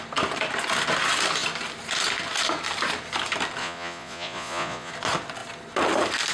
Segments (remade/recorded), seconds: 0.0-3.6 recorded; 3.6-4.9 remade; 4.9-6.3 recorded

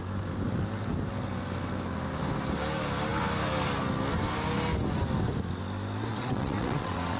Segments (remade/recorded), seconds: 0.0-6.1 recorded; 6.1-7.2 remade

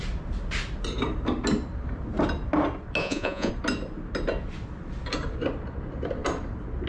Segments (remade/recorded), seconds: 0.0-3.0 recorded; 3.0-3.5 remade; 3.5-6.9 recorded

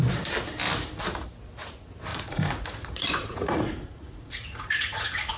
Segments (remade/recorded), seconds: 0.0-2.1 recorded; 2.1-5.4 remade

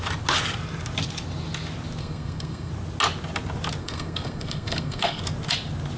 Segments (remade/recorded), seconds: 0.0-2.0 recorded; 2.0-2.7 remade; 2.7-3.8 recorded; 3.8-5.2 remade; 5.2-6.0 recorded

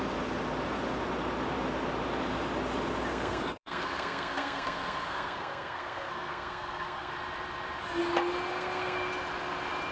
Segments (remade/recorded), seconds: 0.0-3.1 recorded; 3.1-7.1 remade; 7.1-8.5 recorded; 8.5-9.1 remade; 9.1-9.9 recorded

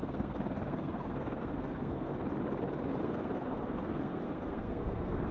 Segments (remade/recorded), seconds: 0.0-2.1 remade; 2.1-3.0 recorded; 3.0-5.3 remade